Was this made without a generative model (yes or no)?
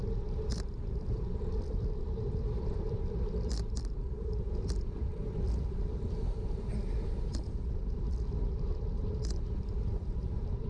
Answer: no